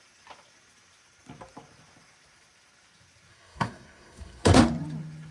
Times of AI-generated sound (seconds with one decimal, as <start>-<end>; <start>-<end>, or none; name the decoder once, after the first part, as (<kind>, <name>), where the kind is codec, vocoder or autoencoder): 3.3-4.6 (codec, SNAC)

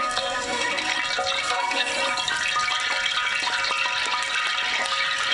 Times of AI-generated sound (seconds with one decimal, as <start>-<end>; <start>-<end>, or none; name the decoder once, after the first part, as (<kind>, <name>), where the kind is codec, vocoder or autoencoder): 0.0-0.9 (codec, SNAC); 1.4-1.9

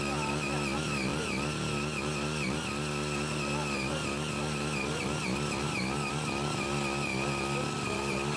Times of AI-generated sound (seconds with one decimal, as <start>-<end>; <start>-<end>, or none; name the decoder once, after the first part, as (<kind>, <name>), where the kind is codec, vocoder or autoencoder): none

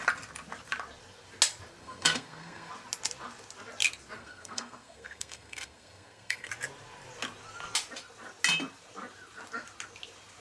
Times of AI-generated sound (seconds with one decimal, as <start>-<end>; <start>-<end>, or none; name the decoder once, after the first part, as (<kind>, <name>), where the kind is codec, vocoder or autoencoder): 1.8-2.7 (codec, SNAC); 4.2-6.5

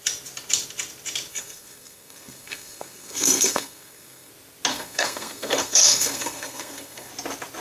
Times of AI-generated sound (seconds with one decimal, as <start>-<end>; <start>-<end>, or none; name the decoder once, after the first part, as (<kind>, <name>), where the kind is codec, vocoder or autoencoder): 1.3-4.3 (codec, SNAC); 4.7-7.1

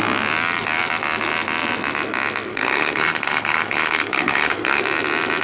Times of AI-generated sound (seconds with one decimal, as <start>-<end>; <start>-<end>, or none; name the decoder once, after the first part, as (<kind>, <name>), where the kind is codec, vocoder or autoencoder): 2.5-4.8 (codec, SNAC)

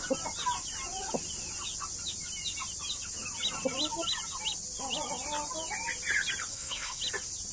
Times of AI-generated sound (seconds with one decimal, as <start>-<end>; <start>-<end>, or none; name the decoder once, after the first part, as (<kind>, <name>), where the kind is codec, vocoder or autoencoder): 6.5-7.0 (codec, SNAC)

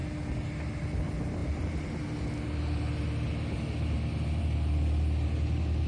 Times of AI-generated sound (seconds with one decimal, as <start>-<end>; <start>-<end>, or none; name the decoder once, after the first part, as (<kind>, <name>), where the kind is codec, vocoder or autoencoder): none